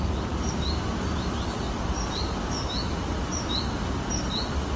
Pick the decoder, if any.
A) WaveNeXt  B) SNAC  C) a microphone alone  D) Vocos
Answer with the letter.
C